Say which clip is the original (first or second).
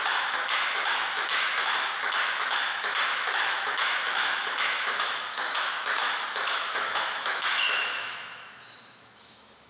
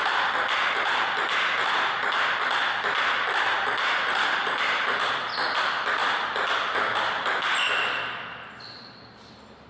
second